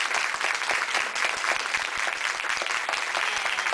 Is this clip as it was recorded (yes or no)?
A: yes